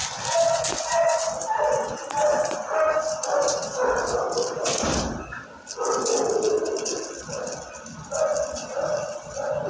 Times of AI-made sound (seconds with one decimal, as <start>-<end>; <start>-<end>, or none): none